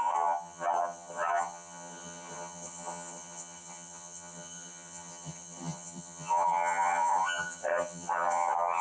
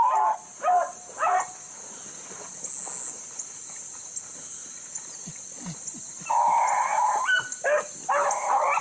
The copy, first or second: first